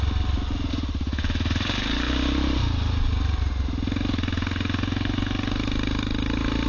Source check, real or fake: real